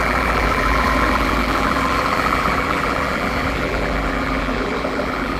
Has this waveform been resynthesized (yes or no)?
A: yes